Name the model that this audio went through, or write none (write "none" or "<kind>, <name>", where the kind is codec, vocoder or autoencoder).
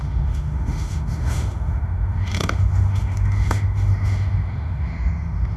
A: autoencoder, DAC-VAE